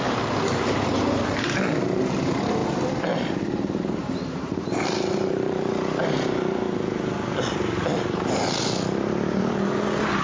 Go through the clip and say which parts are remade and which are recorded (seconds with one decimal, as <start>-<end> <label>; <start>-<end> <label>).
0.0-2.6 recorded; 2.6-4.8 remade; 4.8-10.2 recorded